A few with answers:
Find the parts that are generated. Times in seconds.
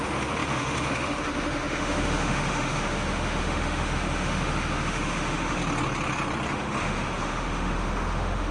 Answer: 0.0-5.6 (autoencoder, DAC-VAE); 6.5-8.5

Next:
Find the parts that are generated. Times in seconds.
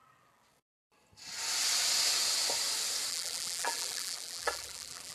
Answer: 3.1-5.1 (vocoder, BigVGAN v2)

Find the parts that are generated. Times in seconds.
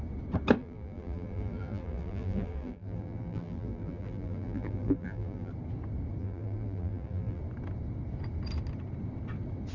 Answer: 0.6-5.5 (vocoder, BigVGAN v2); 6.2-7.4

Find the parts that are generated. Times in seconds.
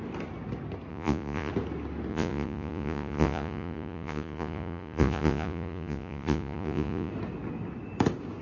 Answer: 0.9-1.5 (vocoder, Vocos); 2.1-7.1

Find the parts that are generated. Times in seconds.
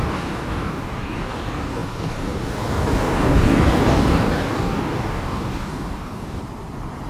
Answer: 0.0-6.4 (codec, DAC)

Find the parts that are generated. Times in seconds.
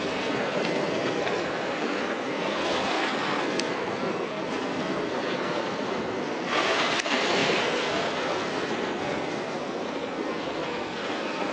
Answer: 0.0-11.5 (codec, SNAC)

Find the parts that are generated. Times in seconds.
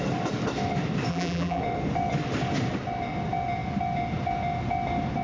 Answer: 1.1-1.6 (vocoder, BigVGAN v2)